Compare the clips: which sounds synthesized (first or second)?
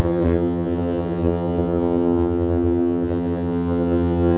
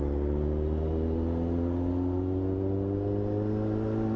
first